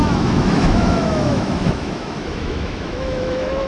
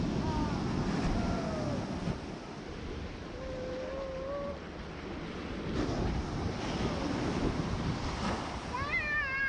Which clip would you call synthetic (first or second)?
first